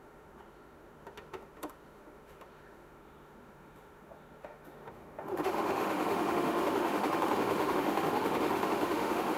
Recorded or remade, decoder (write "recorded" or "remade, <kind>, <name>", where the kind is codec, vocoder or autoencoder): remade, autoencoder, DAC-VAE